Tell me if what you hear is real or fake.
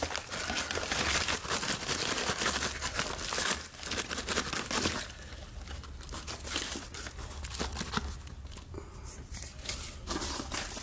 real